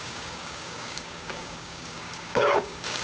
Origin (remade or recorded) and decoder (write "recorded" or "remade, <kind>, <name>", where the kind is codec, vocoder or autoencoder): remade, codec, DAC